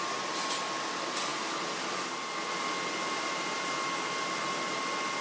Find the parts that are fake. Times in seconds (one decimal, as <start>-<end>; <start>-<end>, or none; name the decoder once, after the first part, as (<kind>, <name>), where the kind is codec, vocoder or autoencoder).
none